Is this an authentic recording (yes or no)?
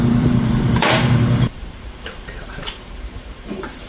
no